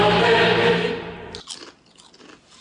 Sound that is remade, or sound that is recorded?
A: recorded